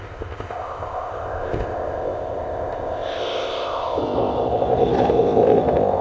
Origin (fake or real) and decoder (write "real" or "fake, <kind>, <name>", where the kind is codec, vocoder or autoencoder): fake, codec, ZipCodec